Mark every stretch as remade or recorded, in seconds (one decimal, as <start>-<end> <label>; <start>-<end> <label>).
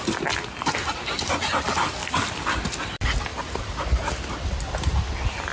0.0-5.5 recorded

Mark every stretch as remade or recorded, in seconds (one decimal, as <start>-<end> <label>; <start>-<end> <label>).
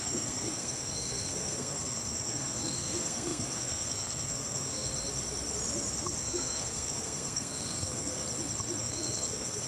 0.0-4.9 remade; 4.9-6.2 recorded; 6.2-8.2 remade; 8.2-8.8 recorded; 8.8-9.7 remade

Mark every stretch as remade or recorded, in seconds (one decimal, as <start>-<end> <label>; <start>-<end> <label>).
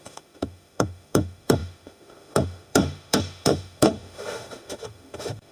0.0-5.5 remade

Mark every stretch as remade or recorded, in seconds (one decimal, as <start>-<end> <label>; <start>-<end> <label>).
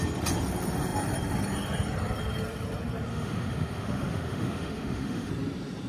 0.0-3.1 recorded; 3.1-5.3 remade; 5.3-5.9 recorded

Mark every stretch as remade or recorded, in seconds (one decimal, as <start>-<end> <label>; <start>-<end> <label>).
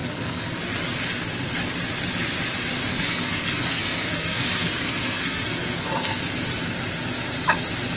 0.0-0.6 remade; 0.6-2.9 recorded; 2.9-6.2 remade; 6.2-8.0 recorded